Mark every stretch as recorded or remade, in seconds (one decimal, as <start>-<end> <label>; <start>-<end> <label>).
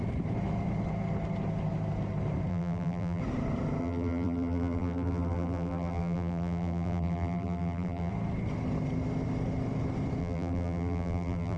0.0-2.5 recorded; 2.5-3.2 remade; 3.2-3.8 recorded; 3.8-8.1 remade; 8.1-10.2 recorded; 10.2-11.6 remade